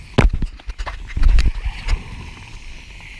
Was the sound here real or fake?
real